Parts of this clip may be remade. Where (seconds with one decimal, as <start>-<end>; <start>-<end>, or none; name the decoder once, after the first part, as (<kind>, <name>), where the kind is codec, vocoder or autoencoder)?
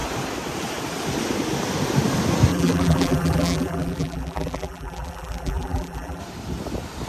2.5-6.2 (vocoder, BigVGAN v2)